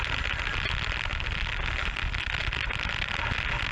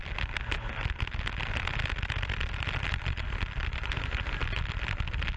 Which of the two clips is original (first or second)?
second